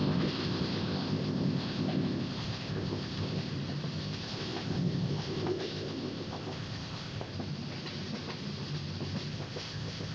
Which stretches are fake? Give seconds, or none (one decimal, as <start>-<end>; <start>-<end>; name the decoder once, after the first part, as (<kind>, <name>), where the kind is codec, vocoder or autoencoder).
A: 0.0-3.5 (codec, ZipCodec); 4.0-7.3; 9.3-10.1